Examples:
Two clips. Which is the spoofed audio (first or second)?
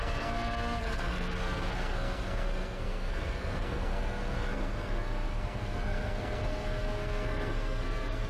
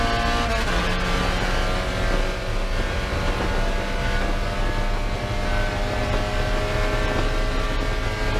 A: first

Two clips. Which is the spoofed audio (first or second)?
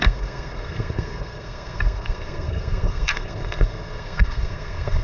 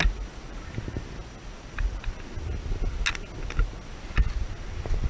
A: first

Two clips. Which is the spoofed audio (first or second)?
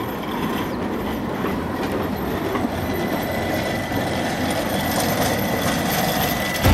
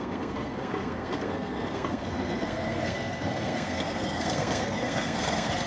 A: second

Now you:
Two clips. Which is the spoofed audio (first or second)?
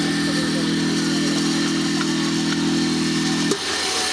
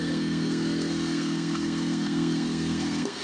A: second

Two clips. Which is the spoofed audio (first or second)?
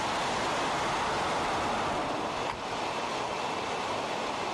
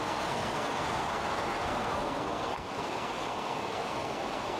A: second